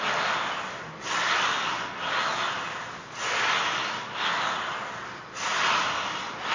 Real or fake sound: real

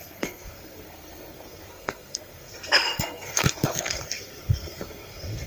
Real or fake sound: fake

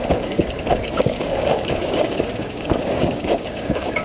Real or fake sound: fake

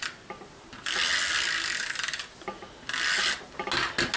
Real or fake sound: real